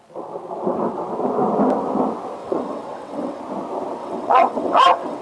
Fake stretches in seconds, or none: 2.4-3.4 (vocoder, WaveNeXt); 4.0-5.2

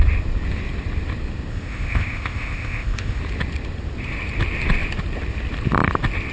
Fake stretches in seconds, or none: 1.5-3.2 (codec, ZipCodec)

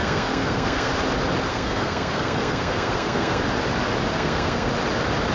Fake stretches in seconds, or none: 0.0-0.9 (codec, SNAC); 1.5-3.4; 4.1-4.7

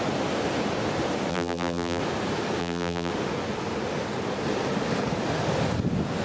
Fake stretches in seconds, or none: 1.3-2.0 (vocoder, BigVGAN v2); 2.6-3.1

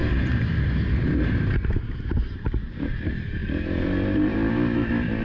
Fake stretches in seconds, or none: 0.0-2.9 (vocoder, BigVGAN v2); 3.4-4.5